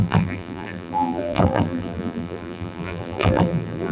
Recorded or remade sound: remade